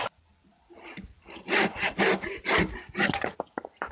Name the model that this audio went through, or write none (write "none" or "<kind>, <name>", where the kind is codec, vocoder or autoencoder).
none